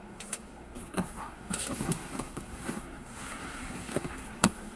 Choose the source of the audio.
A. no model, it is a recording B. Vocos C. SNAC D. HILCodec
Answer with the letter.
C